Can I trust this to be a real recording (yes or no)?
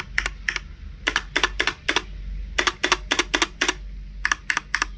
yes